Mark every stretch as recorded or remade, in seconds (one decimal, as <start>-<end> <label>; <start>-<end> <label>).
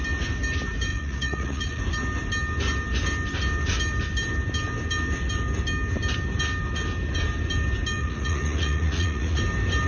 0.0-0.9 recorded; 0.9-1.8 remade; 1.8-8.0 recorded; 8.0-9.4 remade; 9.4-9.9 recorded